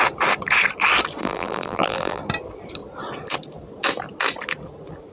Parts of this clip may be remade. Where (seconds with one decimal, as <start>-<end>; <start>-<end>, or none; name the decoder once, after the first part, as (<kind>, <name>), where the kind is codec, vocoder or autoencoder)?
1.2-2.2 (vocoder, BigVGAN v2)